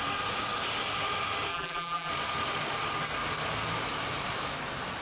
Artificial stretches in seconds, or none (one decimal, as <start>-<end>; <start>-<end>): 1.5-2.1